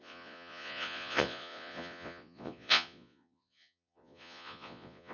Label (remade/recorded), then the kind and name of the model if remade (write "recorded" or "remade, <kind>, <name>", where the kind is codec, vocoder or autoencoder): remade, vocoder, Vocos